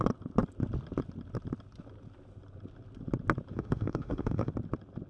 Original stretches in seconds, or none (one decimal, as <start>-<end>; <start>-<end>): 0.0-3.5; 4.5-5.1